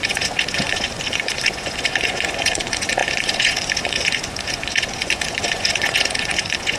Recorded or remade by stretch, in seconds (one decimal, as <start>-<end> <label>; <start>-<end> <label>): 0.0-6.8 remade